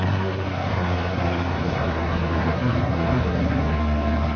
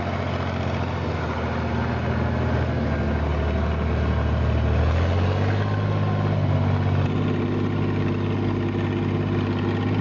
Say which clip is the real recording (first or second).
second